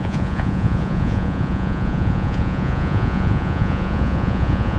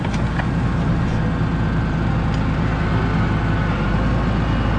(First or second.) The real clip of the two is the second